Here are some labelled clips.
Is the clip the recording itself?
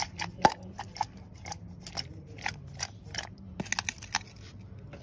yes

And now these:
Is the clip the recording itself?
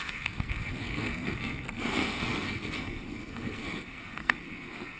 no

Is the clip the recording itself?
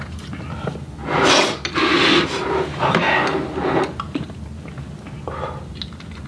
yes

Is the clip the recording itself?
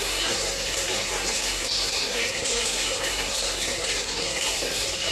no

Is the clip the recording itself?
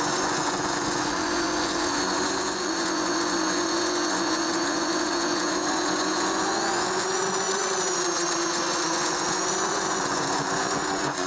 no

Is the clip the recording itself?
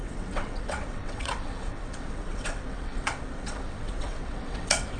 no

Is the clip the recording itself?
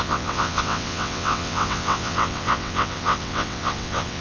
no